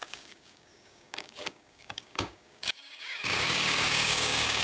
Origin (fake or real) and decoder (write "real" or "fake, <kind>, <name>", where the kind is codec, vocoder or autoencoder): fake, codec, DAC